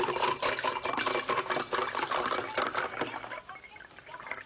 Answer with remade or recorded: recorded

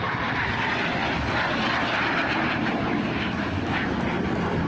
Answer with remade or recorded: recorded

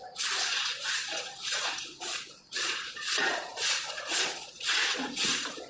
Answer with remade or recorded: remade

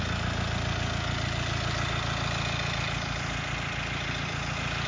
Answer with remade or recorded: recorded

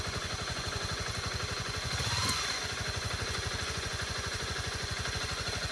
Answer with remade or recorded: remade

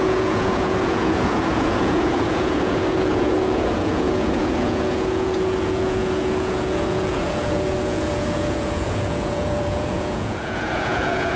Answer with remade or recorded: remade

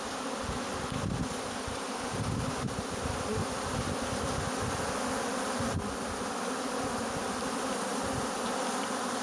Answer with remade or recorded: recorded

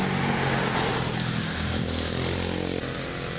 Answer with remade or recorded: recorded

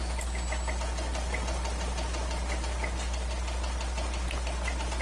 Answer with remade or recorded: recorded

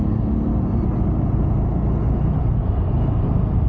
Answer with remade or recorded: recorded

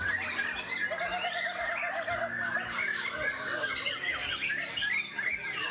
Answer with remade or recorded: recorded